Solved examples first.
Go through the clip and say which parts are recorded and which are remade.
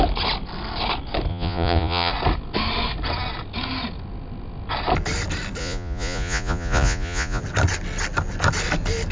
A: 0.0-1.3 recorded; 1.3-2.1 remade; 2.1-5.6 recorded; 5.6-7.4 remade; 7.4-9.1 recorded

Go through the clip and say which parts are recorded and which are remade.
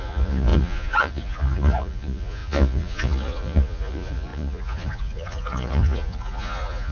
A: 0.0-6.9 remade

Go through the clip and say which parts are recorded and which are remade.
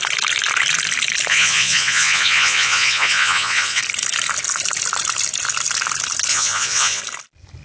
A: 0.0-1.3 recorded; 1.3-3.8 remade; 3.8-6.3 recorded; 6.3-7.0 remade; 7.0-7.6 recorded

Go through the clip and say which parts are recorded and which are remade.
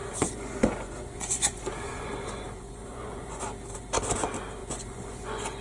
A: 0.0-3.4 remade; 3.4-4.6 recorded; 4.6-5.6 remade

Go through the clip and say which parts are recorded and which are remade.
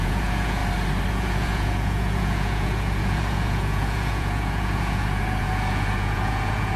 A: 0.0-0.6 remade; 0.6-1.1 recorded; 1.1-6.8 remade